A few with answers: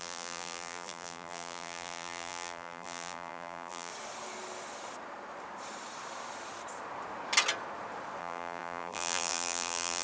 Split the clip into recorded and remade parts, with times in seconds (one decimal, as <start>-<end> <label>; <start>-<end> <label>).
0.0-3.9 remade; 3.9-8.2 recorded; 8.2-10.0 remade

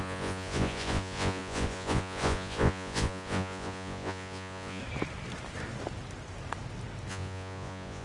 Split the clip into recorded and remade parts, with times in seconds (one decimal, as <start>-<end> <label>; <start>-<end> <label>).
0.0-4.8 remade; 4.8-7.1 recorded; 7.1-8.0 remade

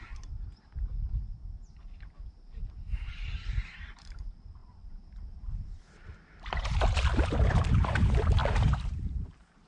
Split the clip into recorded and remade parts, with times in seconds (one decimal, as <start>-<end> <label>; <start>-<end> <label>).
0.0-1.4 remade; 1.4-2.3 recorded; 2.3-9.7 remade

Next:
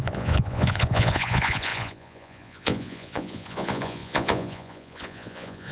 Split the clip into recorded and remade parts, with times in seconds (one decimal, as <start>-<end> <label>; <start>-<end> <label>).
0.0-5.7 remade

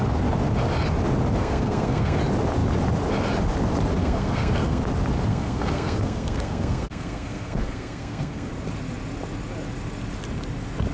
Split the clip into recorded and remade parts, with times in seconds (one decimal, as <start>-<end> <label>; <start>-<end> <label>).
0.0-1.4 recorded; 1.4-2.2 remade; 2.2-4.0 recorded; 4.0-4.8 remade; 4.8-5.3 recorded; 5.3-8.5 remade; 8.5-10.9 recorded